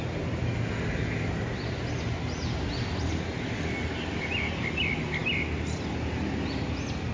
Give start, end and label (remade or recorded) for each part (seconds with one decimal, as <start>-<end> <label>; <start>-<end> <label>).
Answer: 0.0-7.1 recorded